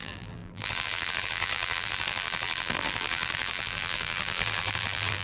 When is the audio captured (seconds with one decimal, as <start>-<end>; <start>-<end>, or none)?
none